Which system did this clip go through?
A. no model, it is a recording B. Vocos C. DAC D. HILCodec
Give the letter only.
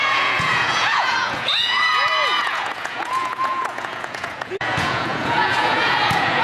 B